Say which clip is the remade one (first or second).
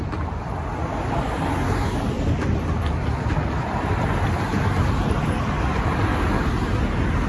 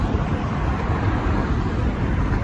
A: second